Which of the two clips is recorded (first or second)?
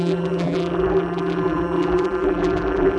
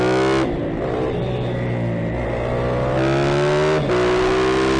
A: second